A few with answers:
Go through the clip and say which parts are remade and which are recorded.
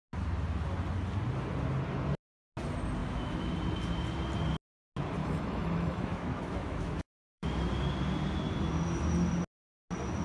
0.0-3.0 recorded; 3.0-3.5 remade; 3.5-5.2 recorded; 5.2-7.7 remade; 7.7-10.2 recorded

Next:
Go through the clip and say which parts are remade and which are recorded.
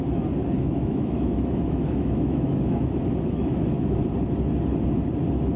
0.0-0.6 recorded; 0.6-4.0 remade; 4.0-5.6 recorded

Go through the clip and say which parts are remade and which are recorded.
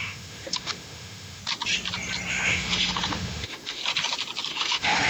0.0-1.4 remade; 1.4-2.3 recorded; 2.3-3.8 remade; 3.8-4.5 recorded; 4.5-5.1 remade